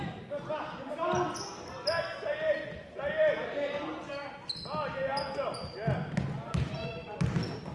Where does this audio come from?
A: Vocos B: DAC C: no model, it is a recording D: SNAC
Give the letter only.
C